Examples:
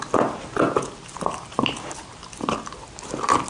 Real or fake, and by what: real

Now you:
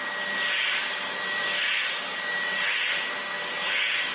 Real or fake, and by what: real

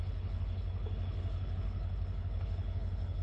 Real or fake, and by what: fake, codec, HILCodec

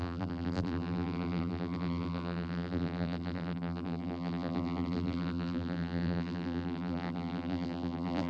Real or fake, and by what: fake, vocoder, BigVGAN v2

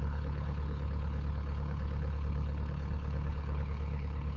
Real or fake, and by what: fake, codec, HILCodec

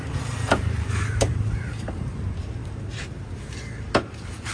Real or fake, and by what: fake, vocoder, BigVGAN v2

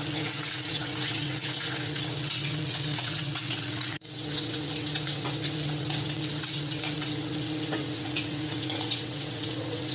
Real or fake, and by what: fake, vocoder, WaveNeXt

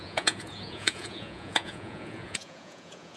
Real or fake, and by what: fake, vocoder, Vocos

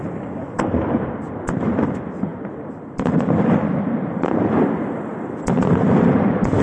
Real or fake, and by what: fake, vocoder, BigVGAN v2